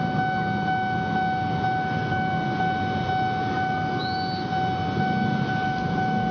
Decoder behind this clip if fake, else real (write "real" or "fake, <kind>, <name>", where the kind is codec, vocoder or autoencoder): real